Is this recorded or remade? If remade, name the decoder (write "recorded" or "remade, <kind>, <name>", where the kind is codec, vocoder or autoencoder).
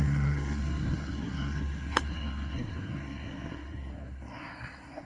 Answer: remade, codec, SNAC